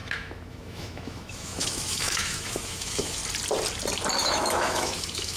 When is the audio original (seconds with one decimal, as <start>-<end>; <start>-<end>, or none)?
3.2-4.2